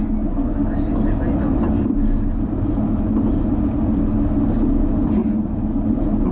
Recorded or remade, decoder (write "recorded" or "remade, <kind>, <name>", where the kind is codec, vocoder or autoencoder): recorded